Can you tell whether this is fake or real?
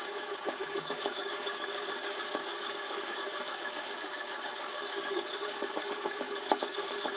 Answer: fake